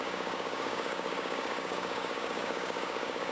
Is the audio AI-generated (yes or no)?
yes